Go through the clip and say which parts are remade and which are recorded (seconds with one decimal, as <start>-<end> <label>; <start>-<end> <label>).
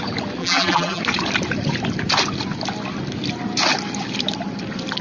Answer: 0.0-0.4 recorded; 0.4-1.0 remade; 1.0-5.0 recorded